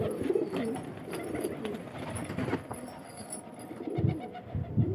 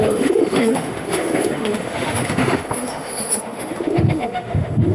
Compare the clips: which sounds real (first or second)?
first